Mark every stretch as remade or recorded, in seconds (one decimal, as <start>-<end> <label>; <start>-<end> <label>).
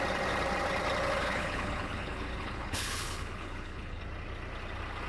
0.0-1.2 recorded; 1.2-4.0 remade; 4.0-5.1 recorded